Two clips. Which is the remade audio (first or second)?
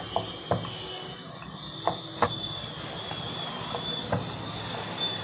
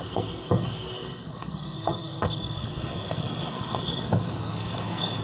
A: second